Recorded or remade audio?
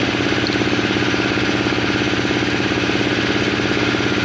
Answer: recorded